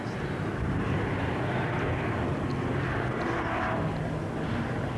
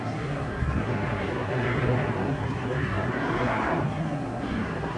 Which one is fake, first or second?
second